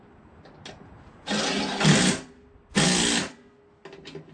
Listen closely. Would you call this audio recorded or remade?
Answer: recorded